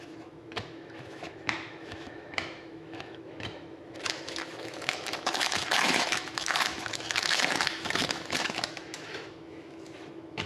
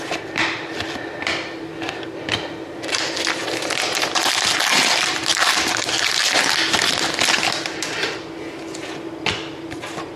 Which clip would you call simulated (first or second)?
first